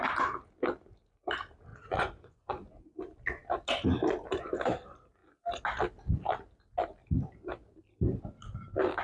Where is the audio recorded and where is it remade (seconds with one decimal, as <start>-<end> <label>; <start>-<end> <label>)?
0.0-1.7 recorded; 1.7-2.7 remade; 2.7-9.0 recorded